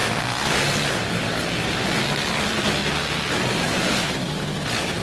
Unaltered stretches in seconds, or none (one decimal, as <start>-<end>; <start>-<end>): 0.0-5.0